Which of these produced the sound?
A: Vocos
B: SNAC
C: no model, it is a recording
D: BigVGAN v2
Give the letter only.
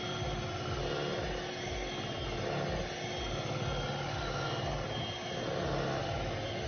C